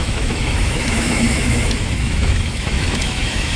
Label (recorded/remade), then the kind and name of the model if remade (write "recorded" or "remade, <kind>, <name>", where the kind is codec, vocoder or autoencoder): remade, autoencoder, DAC-VAE